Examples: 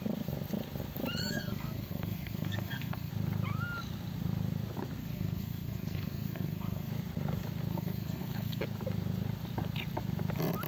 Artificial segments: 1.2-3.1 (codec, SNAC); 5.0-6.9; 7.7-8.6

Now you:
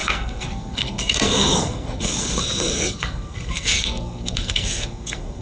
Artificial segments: 0.0-5.4 (codec, SNAC)